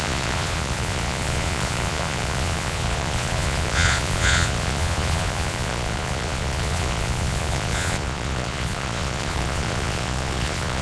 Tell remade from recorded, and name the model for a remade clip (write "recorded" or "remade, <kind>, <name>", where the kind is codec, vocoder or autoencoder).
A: remade, vocoder, Vocos